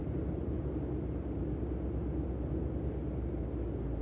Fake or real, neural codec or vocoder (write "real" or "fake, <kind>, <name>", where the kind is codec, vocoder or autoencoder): real